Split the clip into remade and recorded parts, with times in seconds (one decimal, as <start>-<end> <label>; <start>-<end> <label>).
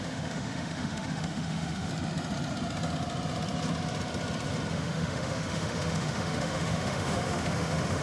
0.0-1.9 remade; 1.9-4.7 recorded; 4.7-8.0 remade